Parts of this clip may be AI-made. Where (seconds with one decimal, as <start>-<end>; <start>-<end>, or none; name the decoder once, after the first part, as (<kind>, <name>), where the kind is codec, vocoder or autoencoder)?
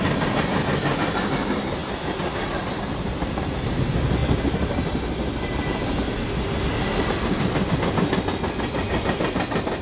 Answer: none